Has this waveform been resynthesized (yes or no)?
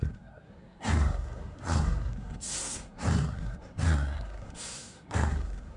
yes